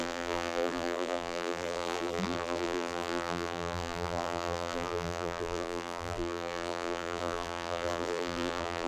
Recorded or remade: remade